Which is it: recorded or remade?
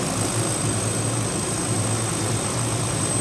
recorded